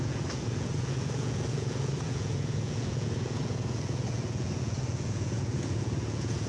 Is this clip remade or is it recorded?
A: remade